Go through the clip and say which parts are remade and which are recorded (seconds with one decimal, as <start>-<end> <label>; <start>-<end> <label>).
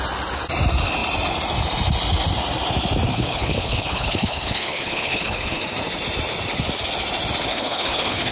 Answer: 0.0-3.1 recorded; 3.1-5.6 remade; 5.6-7.5 recorded; 7.5-8.3 remade